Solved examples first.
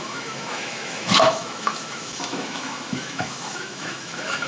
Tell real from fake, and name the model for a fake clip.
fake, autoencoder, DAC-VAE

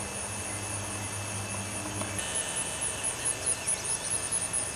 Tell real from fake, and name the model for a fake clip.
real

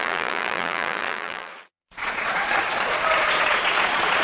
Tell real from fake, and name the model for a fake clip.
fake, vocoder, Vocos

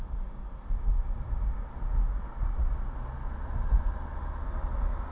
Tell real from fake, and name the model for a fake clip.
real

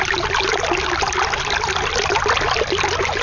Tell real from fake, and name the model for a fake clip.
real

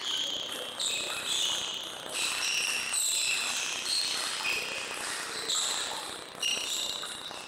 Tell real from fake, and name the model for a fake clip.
real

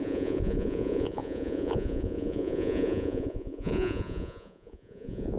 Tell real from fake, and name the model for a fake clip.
fake, vocoder, Vocos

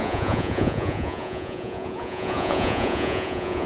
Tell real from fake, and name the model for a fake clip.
fake, vocoder, Vocos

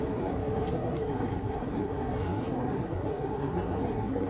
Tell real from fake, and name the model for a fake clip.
fake, codec, SNAC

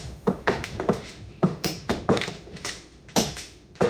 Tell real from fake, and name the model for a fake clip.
fake, autoencoder, DAC-VAE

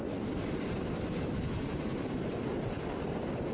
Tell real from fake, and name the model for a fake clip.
real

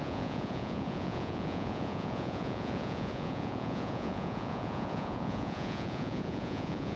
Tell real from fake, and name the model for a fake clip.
fake, vocoder, Vocos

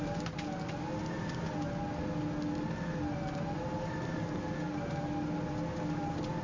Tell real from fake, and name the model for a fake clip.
real